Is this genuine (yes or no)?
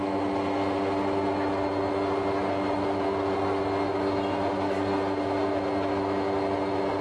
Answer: yes